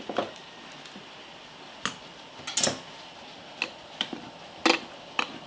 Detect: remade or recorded recorded